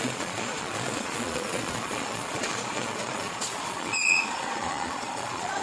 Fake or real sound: fake